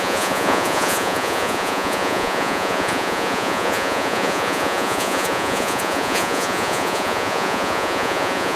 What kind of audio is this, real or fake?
fake